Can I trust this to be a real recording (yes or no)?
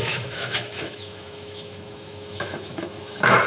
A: no